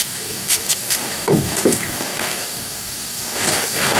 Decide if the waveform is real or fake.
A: fake